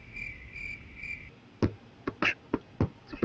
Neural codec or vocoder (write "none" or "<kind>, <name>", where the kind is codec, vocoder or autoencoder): none